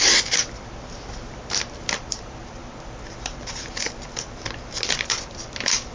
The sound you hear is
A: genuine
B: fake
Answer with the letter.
A